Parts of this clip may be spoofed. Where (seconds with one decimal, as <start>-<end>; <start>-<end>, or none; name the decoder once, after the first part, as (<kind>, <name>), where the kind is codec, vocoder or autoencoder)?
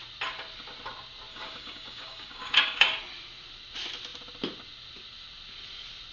1.3-2.9 (codec, DAC)